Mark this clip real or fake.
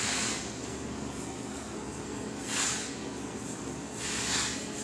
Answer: fake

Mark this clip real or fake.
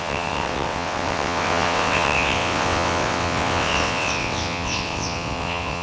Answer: fake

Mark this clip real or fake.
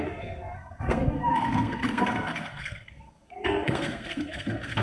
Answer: fake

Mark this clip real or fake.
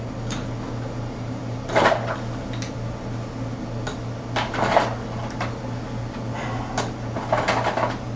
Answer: real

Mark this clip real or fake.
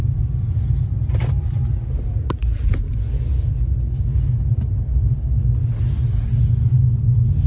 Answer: real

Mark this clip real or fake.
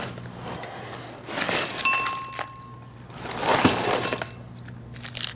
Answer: real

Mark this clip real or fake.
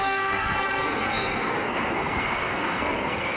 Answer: fake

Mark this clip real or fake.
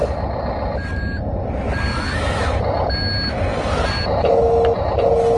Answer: real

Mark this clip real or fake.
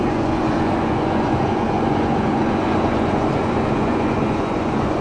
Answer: fake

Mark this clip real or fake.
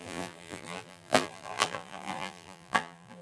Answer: fake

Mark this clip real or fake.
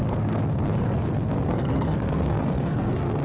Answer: fake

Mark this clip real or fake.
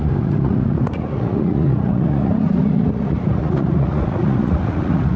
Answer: fake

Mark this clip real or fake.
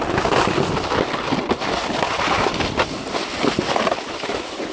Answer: real